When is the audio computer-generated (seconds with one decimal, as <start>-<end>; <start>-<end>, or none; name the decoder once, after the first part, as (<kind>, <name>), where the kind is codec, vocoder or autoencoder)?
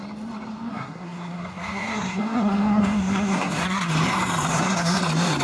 0.7-3.9 (codec, SNAC); 4.5-5.0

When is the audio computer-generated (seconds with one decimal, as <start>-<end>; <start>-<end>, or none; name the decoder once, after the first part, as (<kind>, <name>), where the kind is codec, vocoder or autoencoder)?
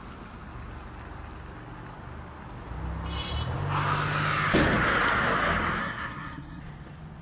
5.8-6.6 (codec, SNAC)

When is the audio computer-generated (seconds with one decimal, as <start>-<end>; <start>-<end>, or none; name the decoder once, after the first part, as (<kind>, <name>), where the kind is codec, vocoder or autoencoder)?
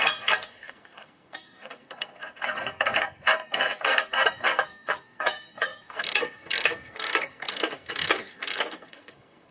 0.0-9.5 (codec, SNAC)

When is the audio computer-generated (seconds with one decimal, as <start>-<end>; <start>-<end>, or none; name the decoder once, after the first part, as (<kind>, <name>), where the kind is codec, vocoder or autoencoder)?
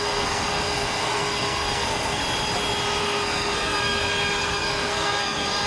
0.0-2.2 (codec, SNAC); 3.0-5.7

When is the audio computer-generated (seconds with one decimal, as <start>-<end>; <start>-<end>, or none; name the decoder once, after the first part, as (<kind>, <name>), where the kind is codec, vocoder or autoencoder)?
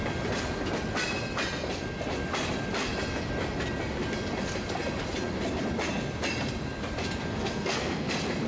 7.3-8.1 (codec, SNAC)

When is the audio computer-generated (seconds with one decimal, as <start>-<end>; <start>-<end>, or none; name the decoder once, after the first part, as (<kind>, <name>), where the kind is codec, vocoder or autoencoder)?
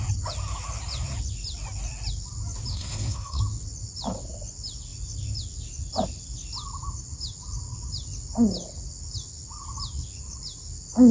2.7-3.4 (codec, SNAC)